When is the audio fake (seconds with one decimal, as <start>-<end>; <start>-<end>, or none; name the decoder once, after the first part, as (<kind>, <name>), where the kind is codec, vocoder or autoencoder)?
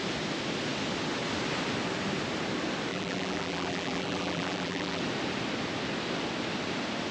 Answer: 2.9-5.0 (vocoder, BigVGAN v2)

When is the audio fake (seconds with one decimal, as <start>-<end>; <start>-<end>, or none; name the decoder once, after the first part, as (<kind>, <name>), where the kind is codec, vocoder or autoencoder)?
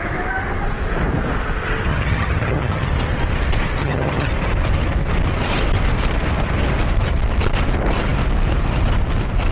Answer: 1.9-2.9 (vocoder, HiFi-GAN); 3.8-4.3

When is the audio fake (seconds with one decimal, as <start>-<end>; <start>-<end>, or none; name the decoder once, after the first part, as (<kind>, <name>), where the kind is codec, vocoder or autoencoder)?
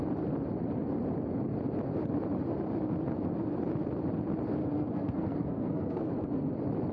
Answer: 4.6-6.5 (codec, SNAC)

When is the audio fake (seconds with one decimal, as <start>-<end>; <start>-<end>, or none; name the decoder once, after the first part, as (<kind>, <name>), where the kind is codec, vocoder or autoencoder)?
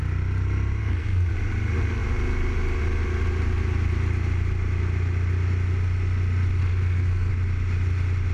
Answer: 0.8-1.3 (codec, SNAC); 6.6-7.3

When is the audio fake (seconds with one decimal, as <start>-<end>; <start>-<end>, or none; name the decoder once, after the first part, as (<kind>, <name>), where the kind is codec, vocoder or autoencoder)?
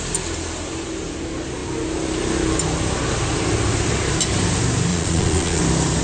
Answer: 4.9-5.6 (vocoder, Vocos)